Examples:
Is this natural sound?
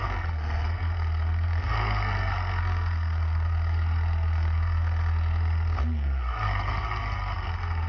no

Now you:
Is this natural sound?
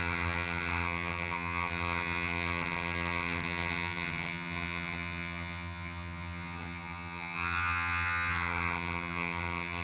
no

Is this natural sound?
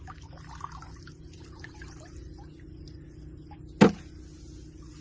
yes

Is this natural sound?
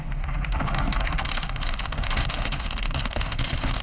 no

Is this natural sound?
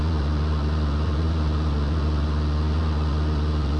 no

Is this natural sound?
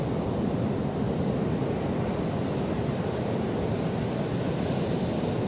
yes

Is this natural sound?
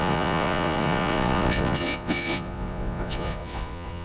no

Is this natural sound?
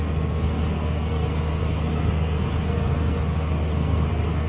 no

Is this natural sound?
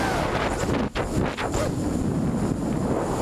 yes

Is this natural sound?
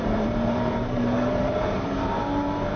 no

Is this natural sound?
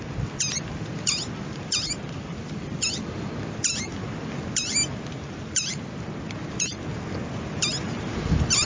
yes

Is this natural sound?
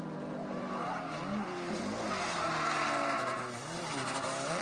yes